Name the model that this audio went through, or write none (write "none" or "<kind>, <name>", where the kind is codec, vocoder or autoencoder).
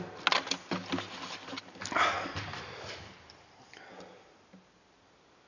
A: none